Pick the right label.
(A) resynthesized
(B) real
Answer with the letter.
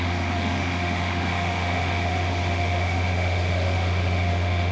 A